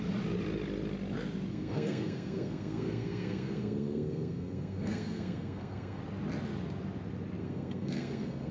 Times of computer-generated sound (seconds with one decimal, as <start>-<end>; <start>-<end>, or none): 1.5-6.0; 7.4-8.5